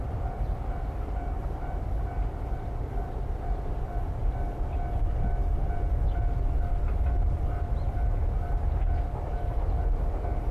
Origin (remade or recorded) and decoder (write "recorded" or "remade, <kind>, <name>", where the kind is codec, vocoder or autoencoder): recorded